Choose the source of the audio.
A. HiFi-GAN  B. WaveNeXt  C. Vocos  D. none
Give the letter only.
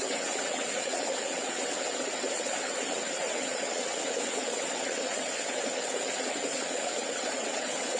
B